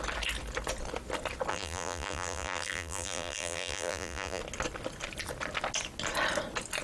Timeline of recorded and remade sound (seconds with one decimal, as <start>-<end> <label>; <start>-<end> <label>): 0.0-1.5 recorded; 1.5-4.4 remade; 4.4-6.8 recorded